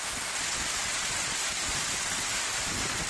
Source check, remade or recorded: recorded